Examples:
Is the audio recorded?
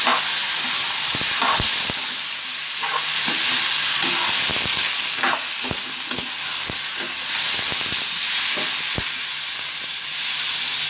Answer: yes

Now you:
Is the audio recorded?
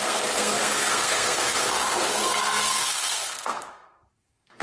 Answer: no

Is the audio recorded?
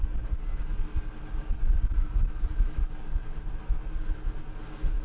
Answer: yes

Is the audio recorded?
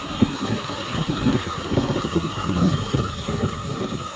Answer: no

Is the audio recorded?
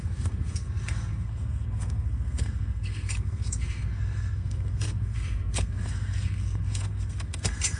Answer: no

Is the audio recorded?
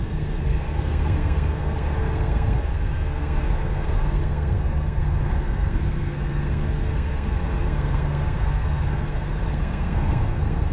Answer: no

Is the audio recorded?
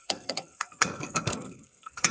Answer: no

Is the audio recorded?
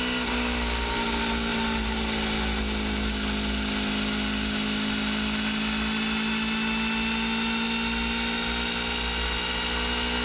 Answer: yes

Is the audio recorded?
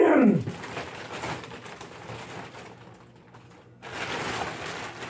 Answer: yes